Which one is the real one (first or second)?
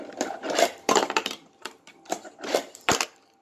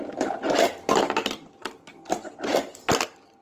second